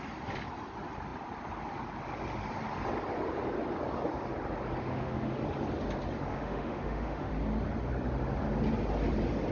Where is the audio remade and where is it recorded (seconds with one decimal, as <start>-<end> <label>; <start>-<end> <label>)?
0.0-4.8 recorded; 4.8-5.4 remade; 5.4-6.3 recorded; 6.3-7.3 remade; 7.3-9.5 recorded